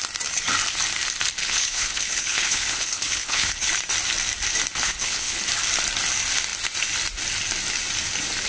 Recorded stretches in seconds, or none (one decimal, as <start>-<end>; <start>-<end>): 0.0-1.4; 3.7-4.8; 5.4-8.5